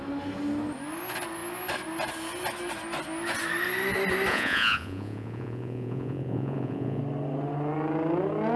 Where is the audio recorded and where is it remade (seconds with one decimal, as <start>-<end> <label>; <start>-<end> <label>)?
0.0-4.3 recorded; 4.3-7.0 remade; 7.0-8.6 recorded